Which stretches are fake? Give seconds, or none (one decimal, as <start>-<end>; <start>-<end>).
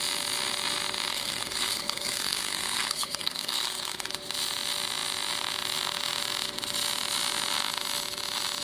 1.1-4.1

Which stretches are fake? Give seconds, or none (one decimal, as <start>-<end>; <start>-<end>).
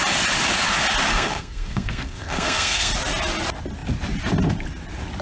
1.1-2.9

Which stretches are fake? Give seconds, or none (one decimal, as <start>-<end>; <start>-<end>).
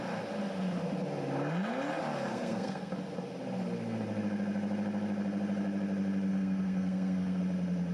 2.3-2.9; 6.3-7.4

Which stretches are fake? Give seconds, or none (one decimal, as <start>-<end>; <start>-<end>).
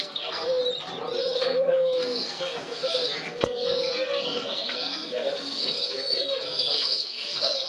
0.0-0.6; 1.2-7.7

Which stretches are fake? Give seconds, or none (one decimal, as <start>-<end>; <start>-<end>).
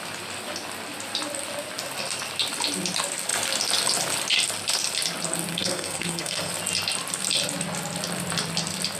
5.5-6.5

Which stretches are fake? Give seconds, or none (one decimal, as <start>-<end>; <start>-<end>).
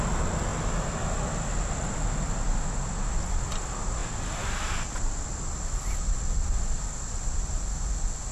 none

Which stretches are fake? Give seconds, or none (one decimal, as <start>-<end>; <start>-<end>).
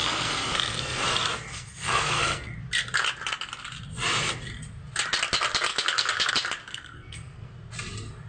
0.0-1.0; 1.5-2.5; 5.7-6.3; 6.7-7.5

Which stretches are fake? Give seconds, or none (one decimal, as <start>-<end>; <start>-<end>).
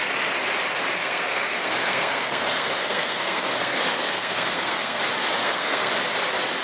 1.0-5.0; 5.4-5.9